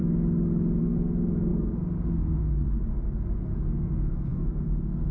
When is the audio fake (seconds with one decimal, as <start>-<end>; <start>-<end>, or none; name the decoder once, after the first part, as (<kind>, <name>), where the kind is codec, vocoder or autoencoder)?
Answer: 0.8-2.8 (codec, SNAC); 3.7-5.1